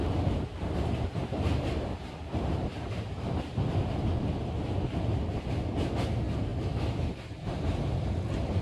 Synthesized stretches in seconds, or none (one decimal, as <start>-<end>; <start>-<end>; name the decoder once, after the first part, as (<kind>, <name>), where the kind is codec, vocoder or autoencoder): 1.2-4.4 (vocoder, BigVGAN v2); 6.5-7.9